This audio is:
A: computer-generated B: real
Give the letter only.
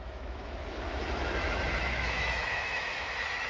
A